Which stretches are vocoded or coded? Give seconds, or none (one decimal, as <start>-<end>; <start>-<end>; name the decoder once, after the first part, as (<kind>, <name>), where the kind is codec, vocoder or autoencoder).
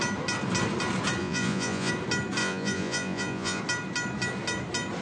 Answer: 1.2-1.9 (vocoder, Vocos); 2.4-3.6